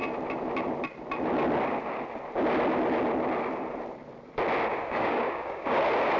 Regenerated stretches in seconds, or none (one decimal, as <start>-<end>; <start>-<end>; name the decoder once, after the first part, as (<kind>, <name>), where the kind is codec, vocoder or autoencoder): 4.7-5.8 (codec, DAC)